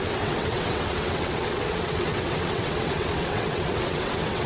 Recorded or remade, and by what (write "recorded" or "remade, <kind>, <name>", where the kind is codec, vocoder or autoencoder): remade, vocoder, WaveNeXt